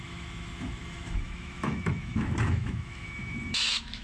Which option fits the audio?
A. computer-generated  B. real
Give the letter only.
A